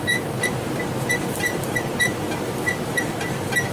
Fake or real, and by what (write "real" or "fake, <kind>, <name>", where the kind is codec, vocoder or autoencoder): fake, vocoder, BigVGAN v2